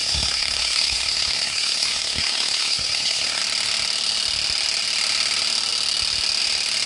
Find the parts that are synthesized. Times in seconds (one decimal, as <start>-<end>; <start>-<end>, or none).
0.0-3.4